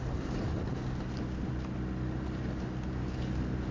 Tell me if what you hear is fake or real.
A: real